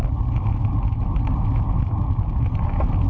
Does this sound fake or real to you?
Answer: real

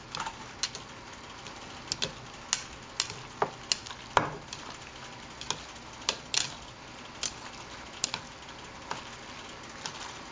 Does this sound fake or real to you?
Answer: real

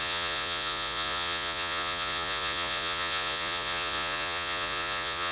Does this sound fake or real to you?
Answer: fake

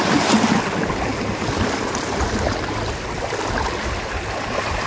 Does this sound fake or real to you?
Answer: real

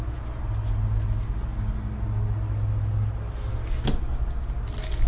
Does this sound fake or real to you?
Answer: real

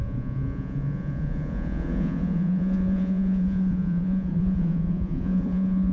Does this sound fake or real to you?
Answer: fake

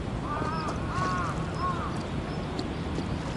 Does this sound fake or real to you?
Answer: real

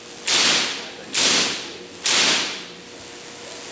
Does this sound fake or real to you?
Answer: real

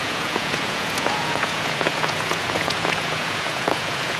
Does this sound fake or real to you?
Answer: fake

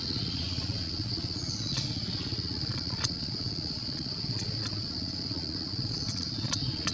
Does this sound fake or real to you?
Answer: fake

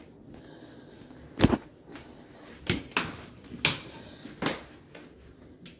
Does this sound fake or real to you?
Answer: real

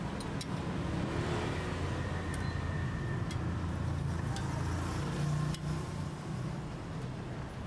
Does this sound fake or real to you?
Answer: real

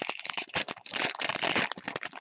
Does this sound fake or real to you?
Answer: real